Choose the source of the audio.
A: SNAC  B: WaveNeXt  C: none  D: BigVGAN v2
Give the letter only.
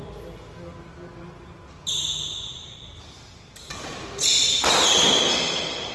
C